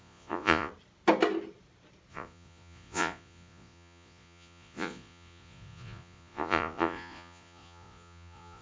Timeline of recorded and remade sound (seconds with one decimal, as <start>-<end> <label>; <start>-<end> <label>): 0.0-0.7 remade; 0.7-2.1 recorded; 2.1-8.6 remade